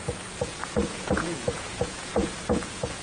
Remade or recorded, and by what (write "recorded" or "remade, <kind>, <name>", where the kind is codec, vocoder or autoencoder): remade, vocoder, Vocos